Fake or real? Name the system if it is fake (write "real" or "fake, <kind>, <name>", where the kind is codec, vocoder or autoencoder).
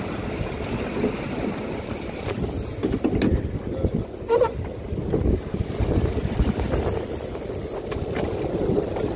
real